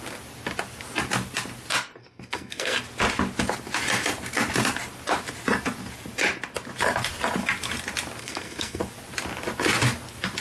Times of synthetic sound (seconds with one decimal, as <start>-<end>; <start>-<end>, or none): 2.0-2.8; 8.2-8.8